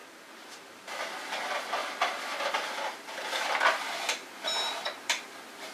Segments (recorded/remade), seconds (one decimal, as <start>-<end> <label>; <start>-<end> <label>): 0.0-1.0 remade; 1.0-1.8 recorded; 1.8-5.2 remade; 5.2-5.7 recorded